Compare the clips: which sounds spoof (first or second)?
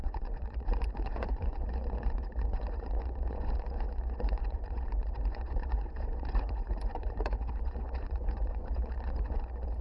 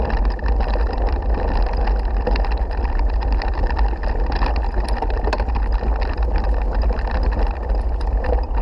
first